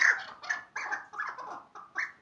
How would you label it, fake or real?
real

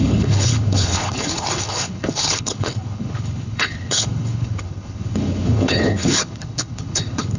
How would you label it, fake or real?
fake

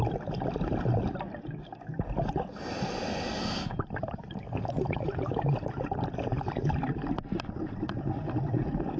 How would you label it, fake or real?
real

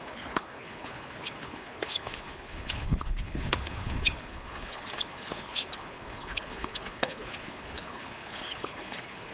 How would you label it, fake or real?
fake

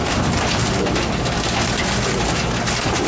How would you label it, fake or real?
real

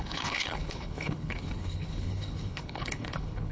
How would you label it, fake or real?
fake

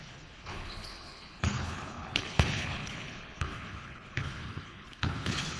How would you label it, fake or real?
fake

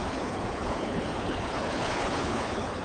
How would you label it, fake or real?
fake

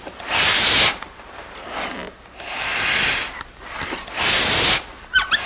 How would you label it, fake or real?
real